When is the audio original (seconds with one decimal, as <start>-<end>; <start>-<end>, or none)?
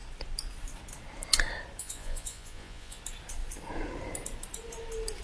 0.0-1.8; 3.0-5.2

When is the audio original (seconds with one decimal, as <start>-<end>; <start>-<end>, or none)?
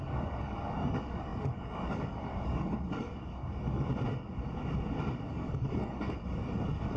3.9-5.3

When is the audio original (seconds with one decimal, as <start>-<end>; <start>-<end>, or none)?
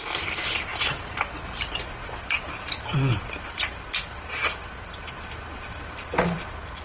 0.7-2.4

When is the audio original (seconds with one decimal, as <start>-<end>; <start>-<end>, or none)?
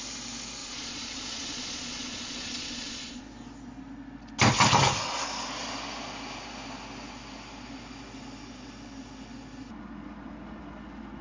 0.0-0.6; 3.2-11.2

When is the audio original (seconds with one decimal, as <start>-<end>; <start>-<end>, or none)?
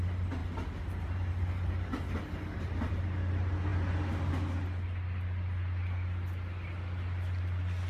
0.0-7.9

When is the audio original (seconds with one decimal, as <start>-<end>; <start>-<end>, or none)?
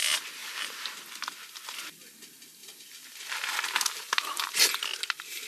0.0-0.4; 0.9-2.6; 4.6-5.5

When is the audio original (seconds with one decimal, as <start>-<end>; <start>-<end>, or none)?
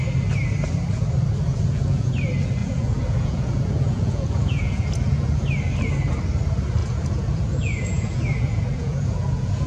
0.0-1.5; 2.1-2.6; 5.4-6.8